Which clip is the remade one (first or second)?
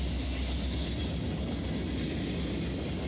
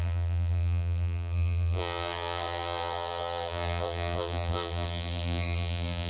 second